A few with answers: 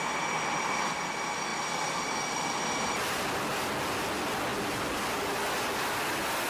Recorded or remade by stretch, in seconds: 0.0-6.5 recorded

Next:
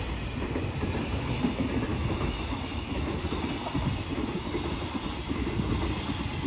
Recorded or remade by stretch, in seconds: 0.0-1.9 recorded; 1.9-3.2 remade; 3.2-6.5 recorded

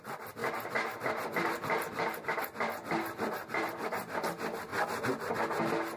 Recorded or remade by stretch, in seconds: 0.0-4.7 remade; 4.7-6.0 recorded

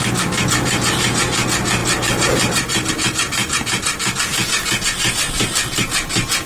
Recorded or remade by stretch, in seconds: 0.0-6.5 recorded